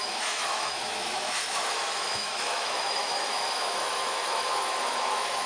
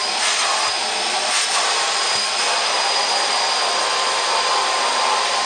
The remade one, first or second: first